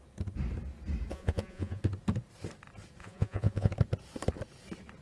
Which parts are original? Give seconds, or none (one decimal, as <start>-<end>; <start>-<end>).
0.0-1.1; 1.8-3.0; 3.7-5.0